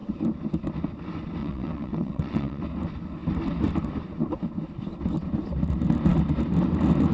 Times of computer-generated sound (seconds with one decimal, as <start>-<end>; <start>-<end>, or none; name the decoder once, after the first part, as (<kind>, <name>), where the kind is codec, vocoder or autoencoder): 1.4-2.6 (vocoder, WaveNeXt)